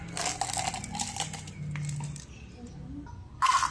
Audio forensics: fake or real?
real